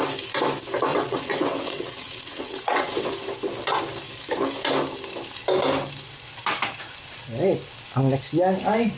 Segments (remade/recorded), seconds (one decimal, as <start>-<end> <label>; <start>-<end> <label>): 0.0-0.9 recorded; 0.9-3.1 remade; 3.1-9.0 recorded